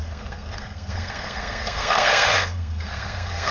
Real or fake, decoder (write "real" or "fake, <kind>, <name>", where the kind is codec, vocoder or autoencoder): fake, codec, SNAC